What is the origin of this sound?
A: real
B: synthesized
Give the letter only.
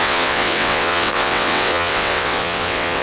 B